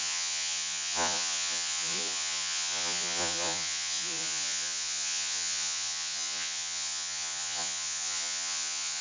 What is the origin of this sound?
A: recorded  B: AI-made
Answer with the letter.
B